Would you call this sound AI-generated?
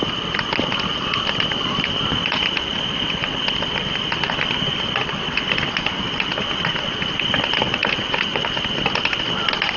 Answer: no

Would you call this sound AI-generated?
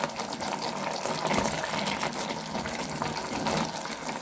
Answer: no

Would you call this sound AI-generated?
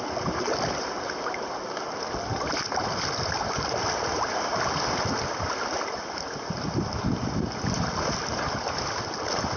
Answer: no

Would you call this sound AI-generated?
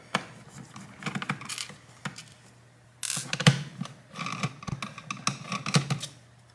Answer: no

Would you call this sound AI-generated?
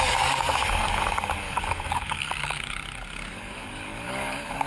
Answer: yes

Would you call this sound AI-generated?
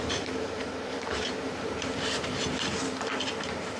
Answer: yes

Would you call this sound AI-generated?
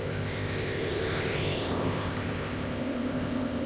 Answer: yes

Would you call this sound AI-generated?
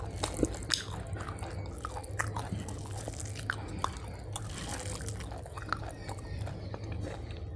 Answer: no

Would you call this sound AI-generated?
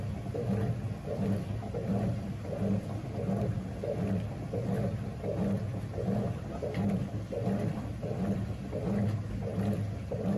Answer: no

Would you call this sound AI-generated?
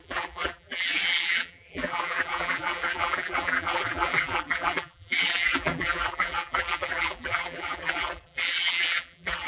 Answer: yes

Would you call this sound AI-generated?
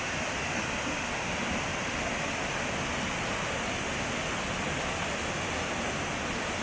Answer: no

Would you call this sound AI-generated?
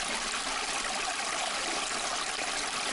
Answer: no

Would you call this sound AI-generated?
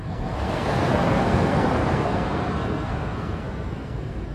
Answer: yes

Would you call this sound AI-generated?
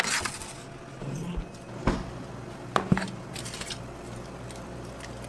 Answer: no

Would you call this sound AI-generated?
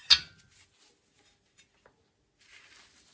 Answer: no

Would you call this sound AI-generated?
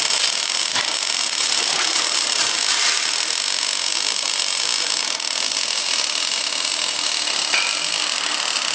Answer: no